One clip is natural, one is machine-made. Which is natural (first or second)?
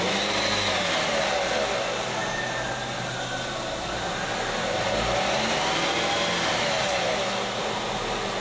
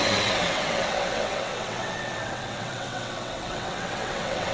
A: first